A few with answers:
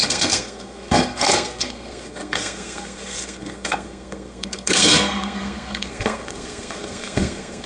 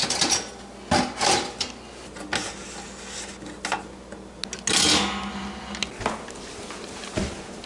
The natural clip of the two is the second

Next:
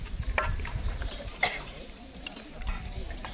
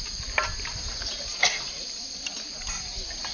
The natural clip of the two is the second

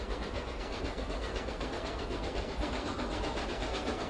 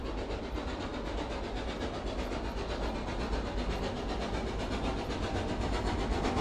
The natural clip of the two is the second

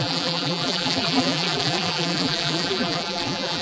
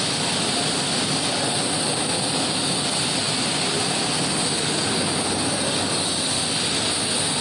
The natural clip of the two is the second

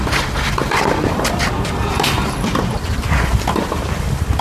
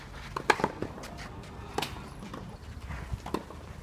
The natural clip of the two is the second